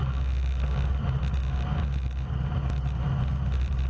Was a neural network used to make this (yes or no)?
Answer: no